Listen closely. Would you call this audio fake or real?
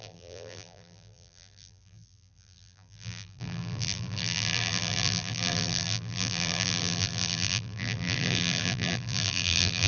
fake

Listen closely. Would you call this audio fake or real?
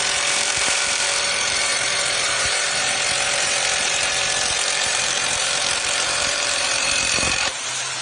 fake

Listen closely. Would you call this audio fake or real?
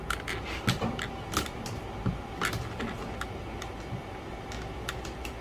real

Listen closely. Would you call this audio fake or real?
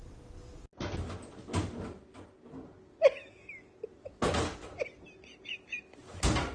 real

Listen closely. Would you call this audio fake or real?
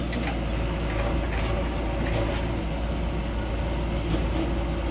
real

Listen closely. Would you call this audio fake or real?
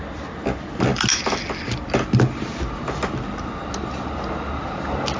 real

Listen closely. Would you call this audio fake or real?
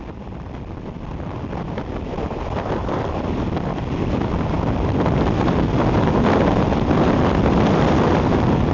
fake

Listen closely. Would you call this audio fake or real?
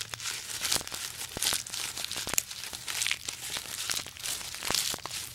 real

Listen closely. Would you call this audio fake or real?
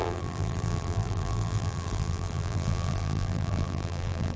fake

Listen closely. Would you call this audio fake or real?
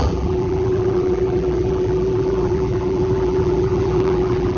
fake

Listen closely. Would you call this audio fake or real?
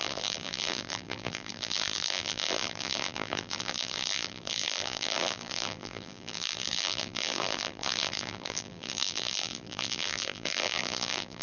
fake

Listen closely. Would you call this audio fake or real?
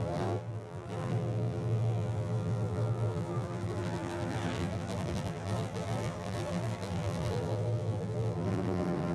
fake